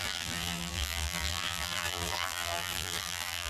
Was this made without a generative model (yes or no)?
no